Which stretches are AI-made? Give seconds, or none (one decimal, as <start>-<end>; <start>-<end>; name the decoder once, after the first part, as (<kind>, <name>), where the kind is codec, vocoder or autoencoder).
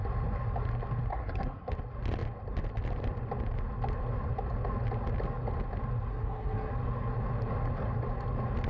1.1-1.7 (codec, SNAC); 6.1-6.7